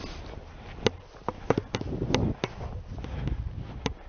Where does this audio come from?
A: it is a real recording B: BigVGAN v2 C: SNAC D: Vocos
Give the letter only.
A